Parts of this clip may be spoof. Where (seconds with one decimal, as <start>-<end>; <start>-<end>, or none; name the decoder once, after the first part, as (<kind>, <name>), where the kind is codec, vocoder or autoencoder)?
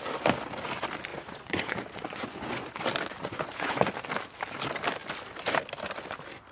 1.1-2.7 (vocoder, Vocos); 3.2-3.9